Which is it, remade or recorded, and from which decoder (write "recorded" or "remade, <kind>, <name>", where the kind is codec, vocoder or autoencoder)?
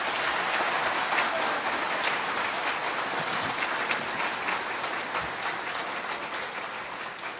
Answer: recorded